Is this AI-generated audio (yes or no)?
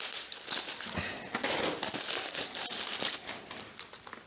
no